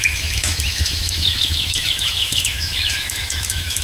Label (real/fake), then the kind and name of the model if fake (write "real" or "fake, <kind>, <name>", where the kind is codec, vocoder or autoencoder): fake, autoencoder, DAC-VAE